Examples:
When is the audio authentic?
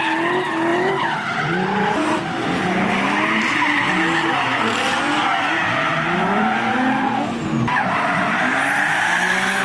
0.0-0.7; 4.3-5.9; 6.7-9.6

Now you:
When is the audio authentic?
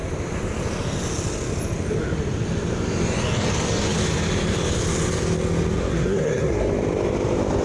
0.0-5.9; 6.7-7.6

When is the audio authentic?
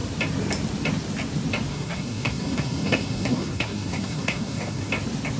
0.0-1.7; 4.9-5.4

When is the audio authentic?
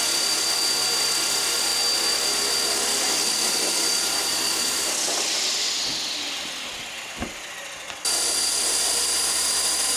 0.0-10.0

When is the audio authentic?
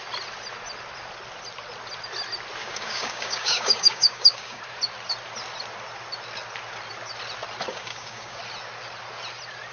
0.0-2.6; 4.6-7.7; 8.4-9.7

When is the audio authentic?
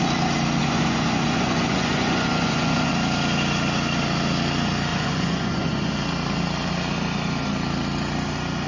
0.0-0.6; 2.9-4.9; 5.9-8.7